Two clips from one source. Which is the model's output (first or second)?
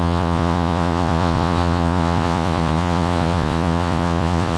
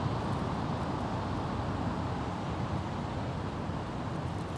first